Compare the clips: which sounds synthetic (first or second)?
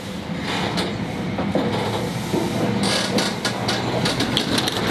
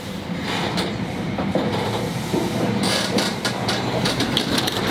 second